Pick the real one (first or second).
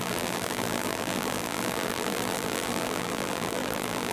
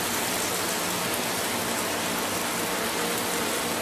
second